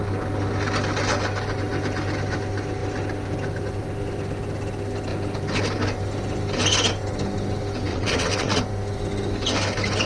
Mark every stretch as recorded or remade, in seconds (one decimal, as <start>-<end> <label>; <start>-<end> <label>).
0.0-7.9 recorded; 7.9-8.6 remade; 8.6-10.1 recorded